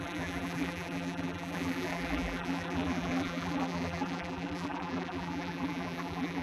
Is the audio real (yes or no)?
no